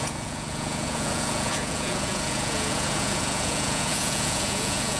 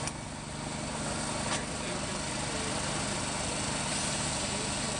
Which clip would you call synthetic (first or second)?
first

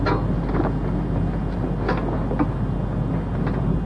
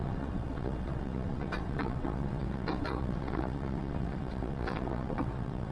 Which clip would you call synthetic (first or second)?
second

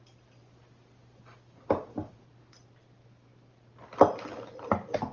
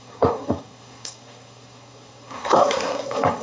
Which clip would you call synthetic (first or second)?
second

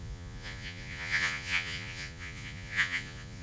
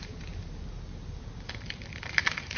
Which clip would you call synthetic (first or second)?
first